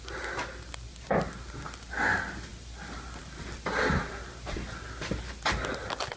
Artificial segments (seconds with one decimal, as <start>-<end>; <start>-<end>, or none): none